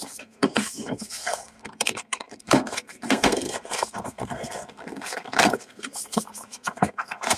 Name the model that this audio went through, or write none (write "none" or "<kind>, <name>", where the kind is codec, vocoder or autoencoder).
codec, SNAC